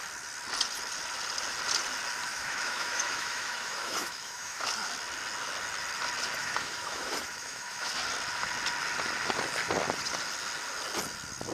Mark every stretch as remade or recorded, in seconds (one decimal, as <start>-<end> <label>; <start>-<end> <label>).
0.0-2.3 recorded; 2.3-4.7 remade; 4.7-6.4 recorded; 6.4-7.9 remade; 7.9-11.5 recorded